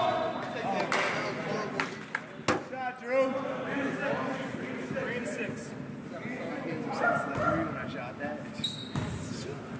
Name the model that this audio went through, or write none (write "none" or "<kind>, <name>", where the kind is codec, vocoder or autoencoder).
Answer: none